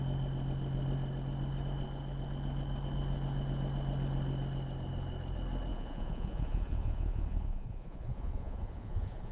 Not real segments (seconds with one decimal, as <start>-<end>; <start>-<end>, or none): 5.7-9.3